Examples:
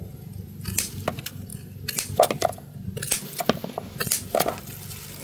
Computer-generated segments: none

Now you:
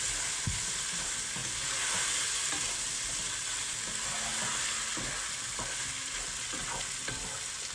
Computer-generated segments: none

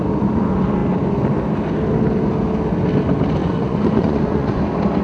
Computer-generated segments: 3.4-4.6

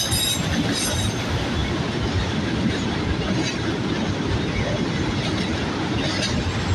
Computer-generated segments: none

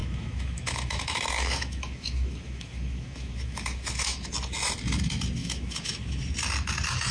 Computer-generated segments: 0.0-4.3; 5.4-6.2

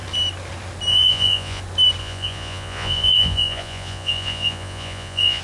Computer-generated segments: 0.9-1.6; 2.0-5.4

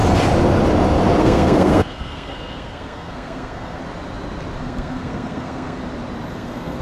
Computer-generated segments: 1.2-3.8; 4.6-5.8; 6.3-6.8